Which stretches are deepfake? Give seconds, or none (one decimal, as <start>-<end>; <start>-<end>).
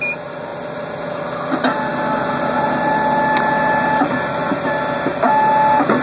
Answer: none